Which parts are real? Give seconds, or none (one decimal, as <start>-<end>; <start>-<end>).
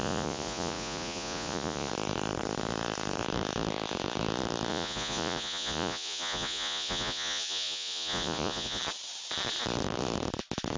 1.9-4.7; 8.8-10.8